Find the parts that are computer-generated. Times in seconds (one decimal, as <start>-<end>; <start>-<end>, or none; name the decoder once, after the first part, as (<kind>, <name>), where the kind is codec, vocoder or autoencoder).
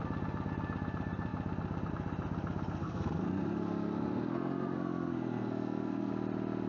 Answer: 2.8-6.1 (codec, SNAC)